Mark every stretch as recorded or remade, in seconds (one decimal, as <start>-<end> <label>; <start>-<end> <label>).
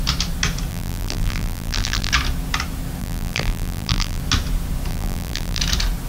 0.0-0.7 recorded; 0.7-2.1 remade; 2.1-3.0 recorded; 3.0-4.2 remade; 4.2-4.9 recorded; 4.9-5.6 remade; 5.6-6.1 recorded